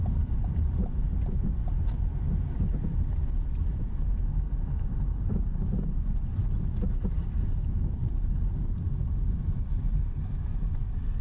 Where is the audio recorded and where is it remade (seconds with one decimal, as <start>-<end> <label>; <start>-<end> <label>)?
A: 0.0-1.1 remade; 1.1-2.3 recorded; 2.3-11.2 remade

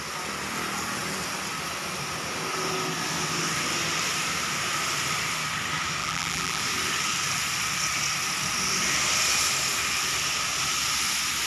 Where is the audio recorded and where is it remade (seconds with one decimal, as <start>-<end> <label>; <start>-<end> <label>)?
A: 0.0-6.0 recorded; 6.0-6.6 remade; 6.6-11.5 recorded

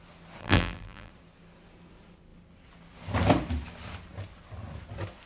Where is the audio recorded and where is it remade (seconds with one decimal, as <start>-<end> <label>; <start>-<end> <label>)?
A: 0.0-0.4 recorded; 0.4-1.1 remade; 1.1-5.3 recorded

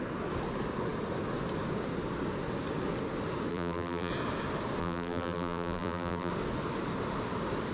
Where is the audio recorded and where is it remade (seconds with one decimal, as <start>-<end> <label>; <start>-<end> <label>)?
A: 0.0-3.5 recorded; 3.5-4.1 remade; 4.1-4.8 recorded; 4.8-6.3 remade; 6.3-7.7 recorded